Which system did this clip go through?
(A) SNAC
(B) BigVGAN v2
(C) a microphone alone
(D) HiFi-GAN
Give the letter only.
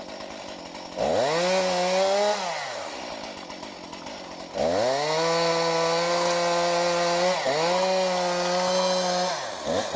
C